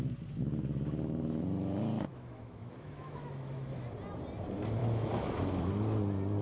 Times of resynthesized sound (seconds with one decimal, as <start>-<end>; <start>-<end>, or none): 2.1-3.8; 4.8-5.6